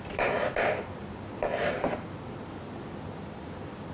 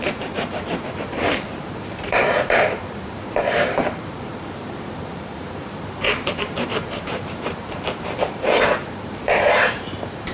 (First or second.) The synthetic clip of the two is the second